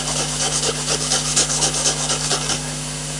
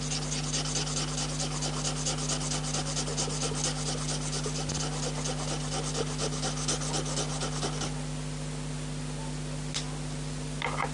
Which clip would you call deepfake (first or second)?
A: first